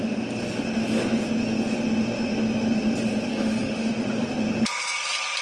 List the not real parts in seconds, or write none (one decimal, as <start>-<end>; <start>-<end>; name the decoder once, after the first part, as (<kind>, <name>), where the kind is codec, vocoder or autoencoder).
3.3-3.9 (autoencoder, DAC-VAE)

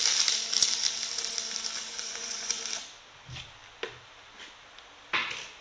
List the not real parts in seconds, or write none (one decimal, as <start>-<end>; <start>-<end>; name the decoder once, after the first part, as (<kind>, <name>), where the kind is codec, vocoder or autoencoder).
2.1-2.6 (vocoder, Vocos)

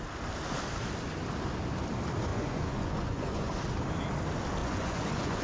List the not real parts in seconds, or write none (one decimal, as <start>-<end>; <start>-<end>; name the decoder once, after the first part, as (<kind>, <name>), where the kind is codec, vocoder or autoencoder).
2.3-3.6 (vocoder, Vocos); 4.6-5.4

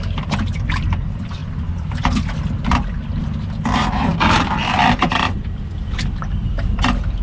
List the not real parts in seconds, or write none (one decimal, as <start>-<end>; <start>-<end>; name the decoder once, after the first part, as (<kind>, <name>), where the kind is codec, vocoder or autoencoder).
none